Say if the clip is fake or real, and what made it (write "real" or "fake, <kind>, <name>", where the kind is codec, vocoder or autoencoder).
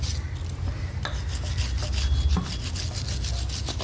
real